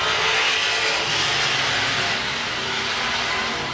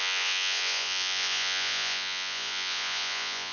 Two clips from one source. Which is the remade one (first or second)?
second